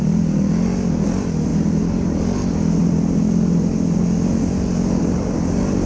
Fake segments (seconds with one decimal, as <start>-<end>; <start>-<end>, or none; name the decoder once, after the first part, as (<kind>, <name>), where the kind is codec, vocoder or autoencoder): none